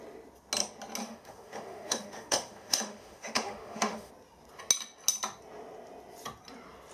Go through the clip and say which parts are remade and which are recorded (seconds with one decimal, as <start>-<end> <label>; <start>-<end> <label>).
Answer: 0.0-1.0 recorded; 1.0-4.1 remade; 4.1-6.9 recorded